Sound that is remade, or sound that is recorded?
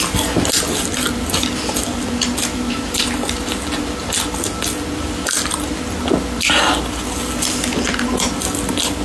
recorded